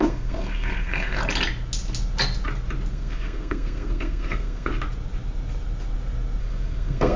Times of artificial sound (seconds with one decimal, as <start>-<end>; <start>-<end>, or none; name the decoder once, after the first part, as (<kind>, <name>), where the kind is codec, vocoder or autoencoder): 0.0-1.2 (codec, SNAC); 2.9-4.7; 6.4-7.2